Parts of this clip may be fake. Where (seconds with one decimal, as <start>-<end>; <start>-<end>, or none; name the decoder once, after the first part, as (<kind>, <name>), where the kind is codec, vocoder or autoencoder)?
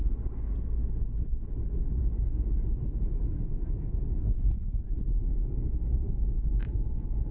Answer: 0.0-0.5 (codec, DAC); 2.0-2.5; 5.2-7.3